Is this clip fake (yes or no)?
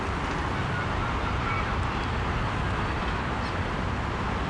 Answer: no